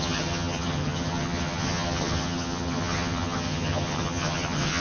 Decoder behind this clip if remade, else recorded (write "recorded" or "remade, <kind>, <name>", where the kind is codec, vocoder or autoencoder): remade, vocoder, HiFi-GAN